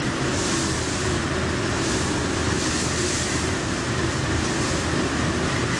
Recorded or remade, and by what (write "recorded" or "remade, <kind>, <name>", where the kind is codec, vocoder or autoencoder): recorded